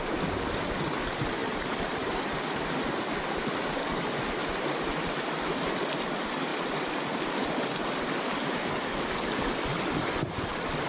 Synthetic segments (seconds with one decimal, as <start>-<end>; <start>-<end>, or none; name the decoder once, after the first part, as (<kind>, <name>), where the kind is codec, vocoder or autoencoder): 1.4-2.6 (vocoder, BigVGAN v2); 4.4-4.9; 6.5-9.9